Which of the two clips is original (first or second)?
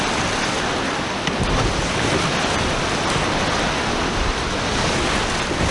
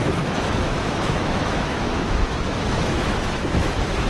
first